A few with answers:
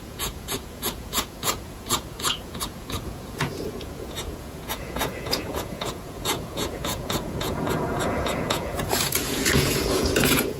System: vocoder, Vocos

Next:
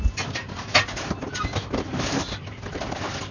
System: none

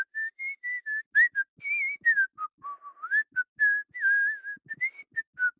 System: none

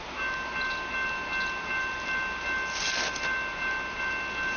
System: none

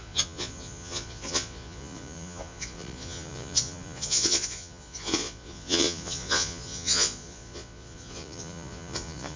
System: vocoder, Vocos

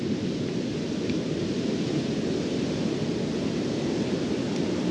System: none